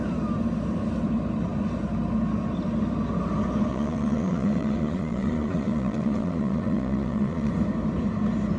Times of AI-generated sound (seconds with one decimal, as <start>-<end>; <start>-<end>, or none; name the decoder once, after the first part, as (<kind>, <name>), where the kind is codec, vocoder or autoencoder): 3.7-7.5 (vocoder, Vocos)